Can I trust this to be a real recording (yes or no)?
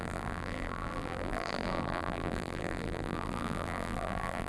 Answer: no